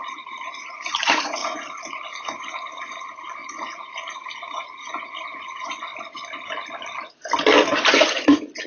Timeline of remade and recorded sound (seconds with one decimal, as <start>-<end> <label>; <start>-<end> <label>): 0.0-5.9 remade; 5.9-7.9 recorded; 7.9-8.7 remade

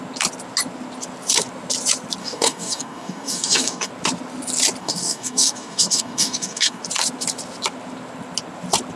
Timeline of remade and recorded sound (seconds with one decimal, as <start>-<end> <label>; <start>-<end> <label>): 0.0-2.2 recorded; 2.2-3.9 remade; 3.9-4.8 recorded; 4.8-6.8 remade; 6.8-9.0 recorded